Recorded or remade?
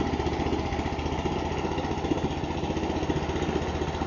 recorded